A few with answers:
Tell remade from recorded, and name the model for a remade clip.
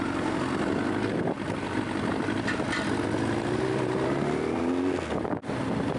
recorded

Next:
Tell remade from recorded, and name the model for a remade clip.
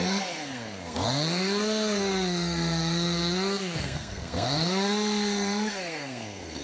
remade, codec, SNAC